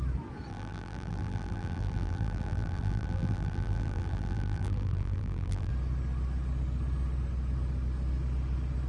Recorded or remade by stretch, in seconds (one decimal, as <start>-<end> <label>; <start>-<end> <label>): 0.0-0.5 recorded; 0.5-5.7 remade; 5.7-8.9 recorded